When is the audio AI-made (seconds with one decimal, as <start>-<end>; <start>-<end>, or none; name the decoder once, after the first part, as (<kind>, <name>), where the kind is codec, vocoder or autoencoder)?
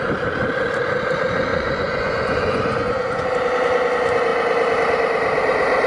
1.5-3.3 (vocoder, Vocos)